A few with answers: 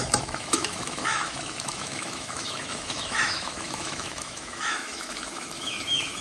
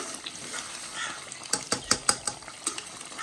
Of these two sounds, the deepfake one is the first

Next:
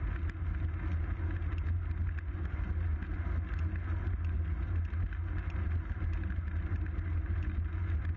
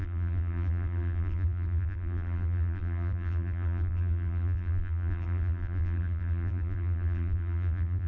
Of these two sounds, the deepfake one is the second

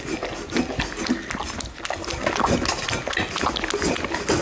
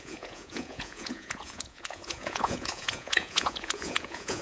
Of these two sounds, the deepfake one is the second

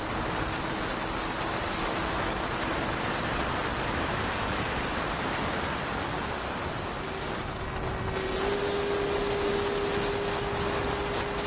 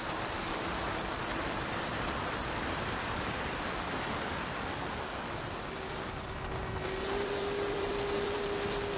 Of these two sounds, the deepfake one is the second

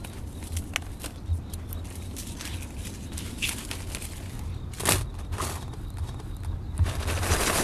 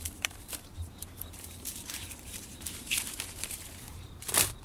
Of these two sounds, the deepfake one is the second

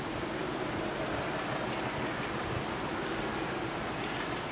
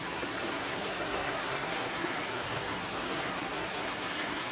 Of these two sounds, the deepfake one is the second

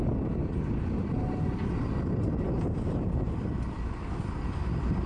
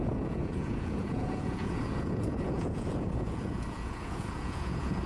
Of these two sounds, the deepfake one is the second